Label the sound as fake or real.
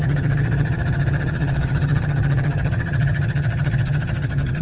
fake